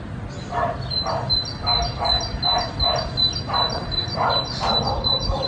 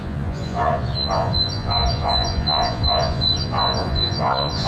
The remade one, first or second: second